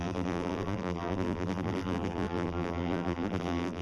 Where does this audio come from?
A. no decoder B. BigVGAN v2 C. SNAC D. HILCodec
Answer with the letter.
B